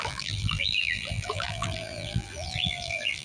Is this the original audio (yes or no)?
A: no